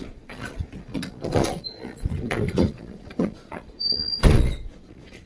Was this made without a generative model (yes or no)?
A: no